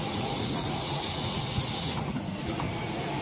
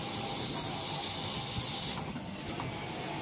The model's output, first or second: first